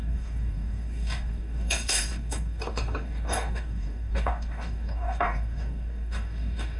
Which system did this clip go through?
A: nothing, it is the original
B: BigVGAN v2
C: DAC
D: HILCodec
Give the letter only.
C